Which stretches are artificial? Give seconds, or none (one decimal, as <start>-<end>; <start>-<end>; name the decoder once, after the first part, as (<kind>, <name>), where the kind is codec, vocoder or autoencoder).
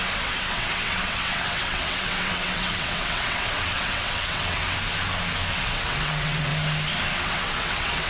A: 0.0-4.6 (vocoder, WaveNeXt); 5.5-6.5; 7.2-8.1